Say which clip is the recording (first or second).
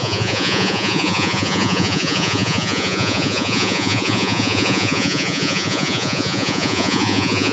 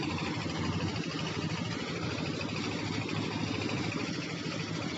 second